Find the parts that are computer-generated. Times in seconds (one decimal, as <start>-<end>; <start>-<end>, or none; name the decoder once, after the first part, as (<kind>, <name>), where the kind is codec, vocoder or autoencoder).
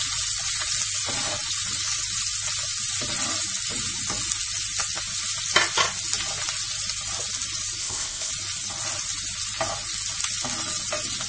7.8-8.3 (codec, ZipCodec)